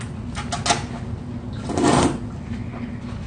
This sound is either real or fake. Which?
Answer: real